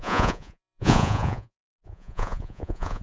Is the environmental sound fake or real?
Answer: fake